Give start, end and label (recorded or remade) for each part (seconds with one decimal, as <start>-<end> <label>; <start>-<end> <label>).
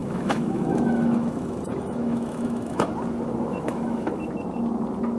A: 0.0-2.9 remade; 2.9-3.5 recorded; 3.5-4.1 remade; 4.1-5.2 recorded